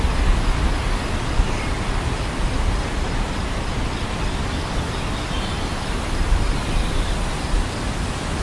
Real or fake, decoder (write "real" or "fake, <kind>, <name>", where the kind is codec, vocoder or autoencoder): real